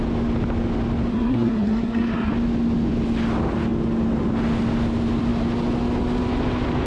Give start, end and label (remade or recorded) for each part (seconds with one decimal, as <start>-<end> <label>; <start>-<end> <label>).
0.0-1.1 recorded; 1.1-2.3 remade; 2.3-6.9 recorded